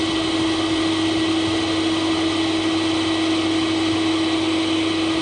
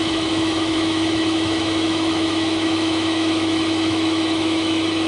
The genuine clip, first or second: first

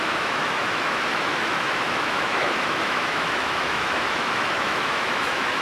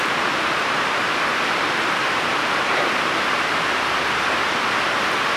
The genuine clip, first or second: second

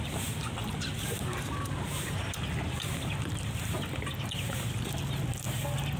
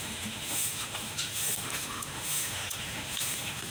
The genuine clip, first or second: first